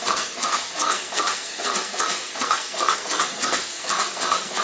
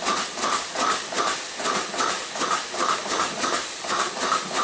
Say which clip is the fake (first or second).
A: first